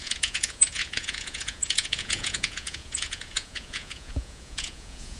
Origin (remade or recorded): remade